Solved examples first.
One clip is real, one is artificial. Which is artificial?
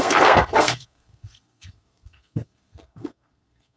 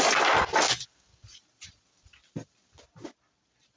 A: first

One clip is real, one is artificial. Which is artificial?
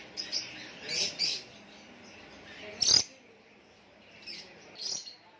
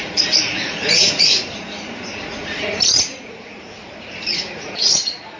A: second